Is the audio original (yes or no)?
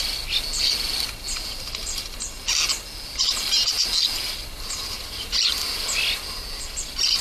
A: yes